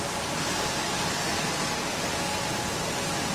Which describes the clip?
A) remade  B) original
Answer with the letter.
B